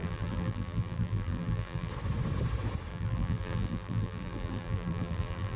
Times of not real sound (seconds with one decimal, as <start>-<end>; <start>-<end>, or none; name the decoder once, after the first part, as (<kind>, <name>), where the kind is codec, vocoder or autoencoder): 0.0-1.9 (vocoder, BigVGAN v2); 2.9-5.6